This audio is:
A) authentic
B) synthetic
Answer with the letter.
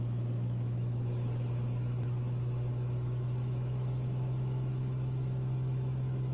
B